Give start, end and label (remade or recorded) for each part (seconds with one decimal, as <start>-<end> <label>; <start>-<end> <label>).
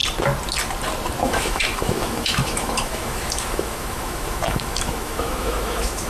0.0-1.2 recorded; 1.2-6.1 remade